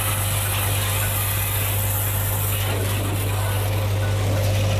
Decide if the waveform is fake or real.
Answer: real